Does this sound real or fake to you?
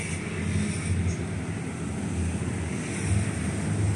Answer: real